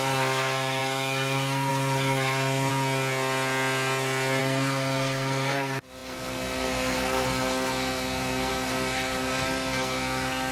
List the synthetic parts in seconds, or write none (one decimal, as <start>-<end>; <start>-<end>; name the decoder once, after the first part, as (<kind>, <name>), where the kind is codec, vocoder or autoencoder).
0.0-2.7 (codec, SNAC); 4.4-10.5

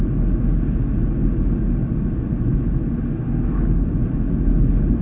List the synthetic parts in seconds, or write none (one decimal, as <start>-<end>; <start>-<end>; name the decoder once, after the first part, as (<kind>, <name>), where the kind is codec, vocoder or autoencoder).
none

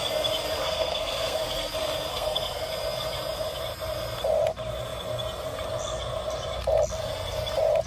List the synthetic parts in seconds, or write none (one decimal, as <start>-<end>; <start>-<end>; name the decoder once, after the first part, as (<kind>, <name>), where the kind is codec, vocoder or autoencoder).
0.6-1.7 (codec, SNAC); 2.1-2.7

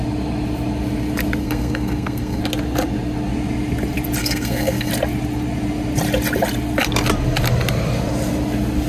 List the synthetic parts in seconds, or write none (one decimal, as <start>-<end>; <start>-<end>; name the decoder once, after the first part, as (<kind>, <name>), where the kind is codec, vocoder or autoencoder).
1.4-2.4 (codec, SNAC); 4.2-4.9

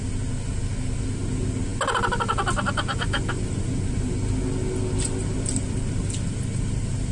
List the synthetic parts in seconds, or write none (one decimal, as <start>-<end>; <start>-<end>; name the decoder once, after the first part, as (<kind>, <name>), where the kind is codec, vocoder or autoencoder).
none

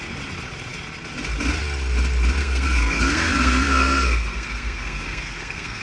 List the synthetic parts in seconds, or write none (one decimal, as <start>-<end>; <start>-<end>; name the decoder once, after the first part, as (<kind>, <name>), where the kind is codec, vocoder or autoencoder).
2.4-5.8 (codec, SNAC)